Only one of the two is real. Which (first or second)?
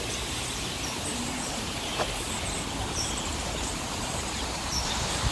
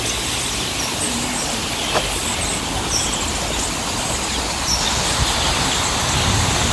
second